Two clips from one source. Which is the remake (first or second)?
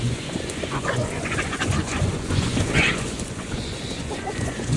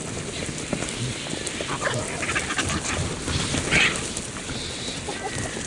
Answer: first